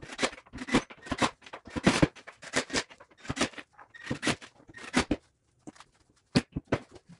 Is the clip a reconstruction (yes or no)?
yes